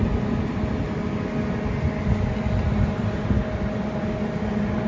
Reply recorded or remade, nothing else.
recorded